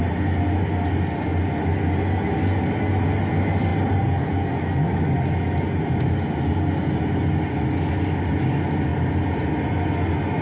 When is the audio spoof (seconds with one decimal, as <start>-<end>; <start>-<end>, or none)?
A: none

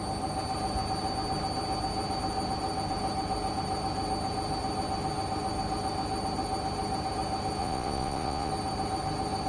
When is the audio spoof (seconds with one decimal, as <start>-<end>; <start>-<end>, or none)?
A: 7.6-8.5